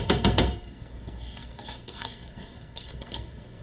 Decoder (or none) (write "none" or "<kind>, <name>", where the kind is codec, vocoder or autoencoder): codec, SNAC